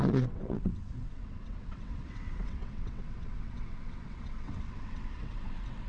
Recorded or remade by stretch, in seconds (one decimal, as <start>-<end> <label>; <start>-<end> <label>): 0.0-5.9 remade